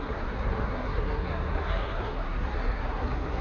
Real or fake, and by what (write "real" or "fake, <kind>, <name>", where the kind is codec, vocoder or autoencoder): fake, codec, SNAC